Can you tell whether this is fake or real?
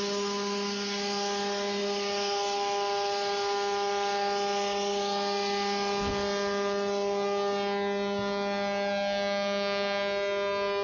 real